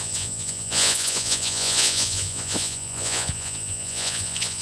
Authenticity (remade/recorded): remade